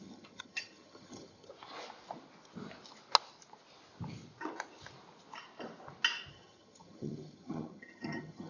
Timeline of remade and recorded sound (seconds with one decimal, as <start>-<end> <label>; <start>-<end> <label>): 0.0-1.5 remade; 1.5-6.3 recorded; 6.3-8.5 remade